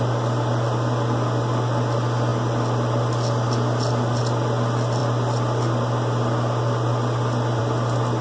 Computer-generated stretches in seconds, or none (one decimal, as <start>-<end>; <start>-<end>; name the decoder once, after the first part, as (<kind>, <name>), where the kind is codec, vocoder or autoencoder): none